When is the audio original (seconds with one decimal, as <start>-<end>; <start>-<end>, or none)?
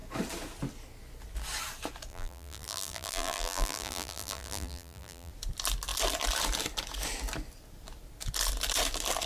0.0-2.1; 5.3-9.2